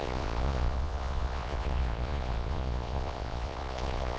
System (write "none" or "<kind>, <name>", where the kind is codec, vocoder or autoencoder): vocoder, Vocos